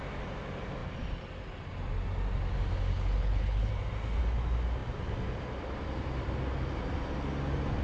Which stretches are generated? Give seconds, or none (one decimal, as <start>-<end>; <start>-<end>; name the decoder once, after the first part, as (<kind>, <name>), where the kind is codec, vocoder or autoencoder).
2.9-3.7 (codec, HILCodec)